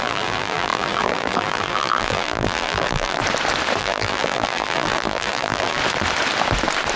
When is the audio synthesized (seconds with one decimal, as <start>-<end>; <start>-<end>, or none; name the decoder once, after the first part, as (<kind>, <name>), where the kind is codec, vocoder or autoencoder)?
0.0-3.2 (vocoder, BigVGAN v2); 3.8-5.8